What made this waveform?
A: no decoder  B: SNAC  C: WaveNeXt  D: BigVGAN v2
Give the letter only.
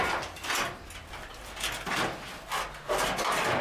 A